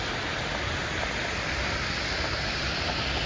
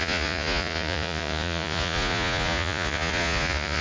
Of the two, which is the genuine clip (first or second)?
first